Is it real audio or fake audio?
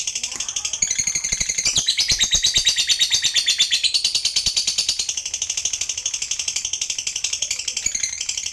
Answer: fake